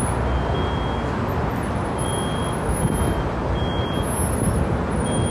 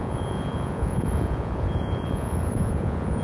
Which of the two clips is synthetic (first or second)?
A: second